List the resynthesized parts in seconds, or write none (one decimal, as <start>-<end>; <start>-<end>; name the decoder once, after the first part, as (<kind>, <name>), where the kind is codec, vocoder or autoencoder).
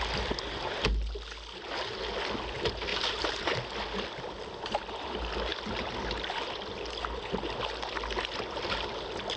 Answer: 2.9-3.4 (vocoder, BigVGAN v2)